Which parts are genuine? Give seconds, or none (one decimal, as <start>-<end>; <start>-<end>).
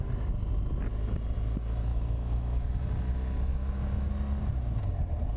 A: 0.0-1.9; 2.7-3.5; 4.1-5.4